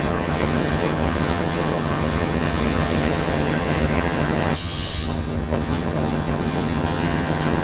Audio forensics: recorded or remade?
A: remade